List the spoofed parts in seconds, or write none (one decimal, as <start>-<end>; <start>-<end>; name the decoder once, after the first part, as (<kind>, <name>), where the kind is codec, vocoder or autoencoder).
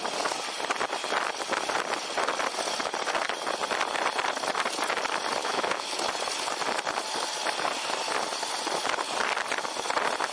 5.4-5.9 (autoencoder, DAC-VAE)